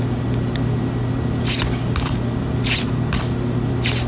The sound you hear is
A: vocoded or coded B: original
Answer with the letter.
B